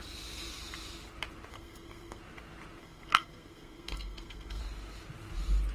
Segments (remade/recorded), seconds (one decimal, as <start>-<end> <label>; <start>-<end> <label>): 0.0-1.5 recorded; 1.5-2.2 remade; 2.2-2.8 recorded; 2.8-4.6 remade; 4.6-5.7 recorded